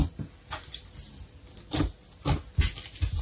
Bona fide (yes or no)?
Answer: no